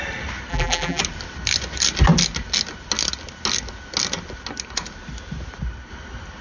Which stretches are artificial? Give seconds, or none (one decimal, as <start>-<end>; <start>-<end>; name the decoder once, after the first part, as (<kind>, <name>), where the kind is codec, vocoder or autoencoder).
0.5-1.0 (vocoder, BigVGAN v2)